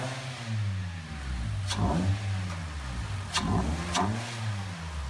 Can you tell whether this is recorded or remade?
recorded